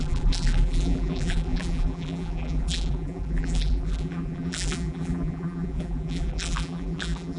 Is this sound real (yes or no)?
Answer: no